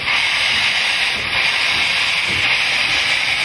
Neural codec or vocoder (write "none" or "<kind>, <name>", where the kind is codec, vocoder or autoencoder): none